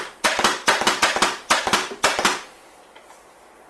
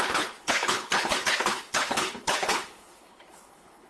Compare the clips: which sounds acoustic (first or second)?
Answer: first